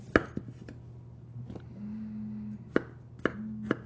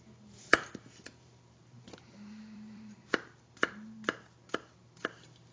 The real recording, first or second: first